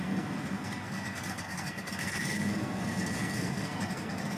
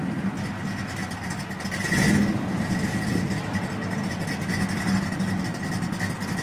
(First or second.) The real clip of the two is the second